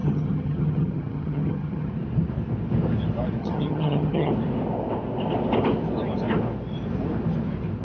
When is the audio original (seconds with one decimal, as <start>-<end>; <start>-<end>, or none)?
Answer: 1.9-3.4; 4.3-7.8